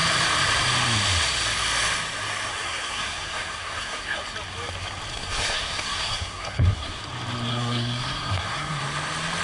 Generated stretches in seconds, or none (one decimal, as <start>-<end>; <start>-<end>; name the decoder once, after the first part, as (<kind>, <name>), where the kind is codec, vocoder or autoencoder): 2.5-4.2 (codec, SNAC); 5.1-7.0; 7.5-8.8

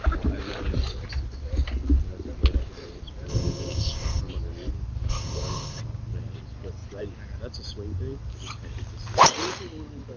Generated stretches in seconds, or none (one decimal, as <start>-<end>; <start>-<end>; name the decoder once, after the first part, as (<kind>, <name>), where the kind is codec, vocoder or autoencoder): 3.3-4.2 (codec, ZipCodec); 5.1-5.8

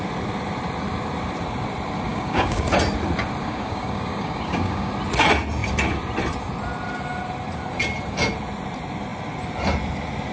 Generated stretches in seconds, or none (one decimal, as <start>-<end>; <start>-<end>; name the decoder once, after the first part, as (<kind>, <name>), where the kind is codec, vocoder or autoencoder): 2.1-2.7 (codec, DAC); 3.4-4.9

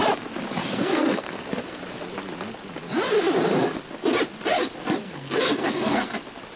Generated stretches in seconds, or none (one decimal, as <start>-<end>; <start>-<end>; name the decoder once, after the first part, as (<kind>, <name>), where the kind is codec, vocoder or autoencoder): 0.6-1.8 (codec, SNAC); 5.0-6.1

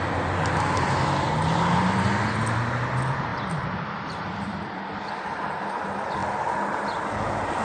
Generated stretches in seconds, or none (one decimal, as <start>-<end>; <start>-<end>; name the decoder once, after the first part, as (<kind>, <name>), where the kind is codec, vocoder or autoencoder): none